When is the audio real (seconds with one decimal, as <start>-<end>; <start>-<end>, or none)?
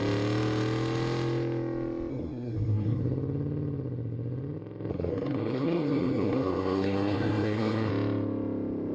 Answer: 0.0-2.1; 3.0-4.9; 7.9-8.9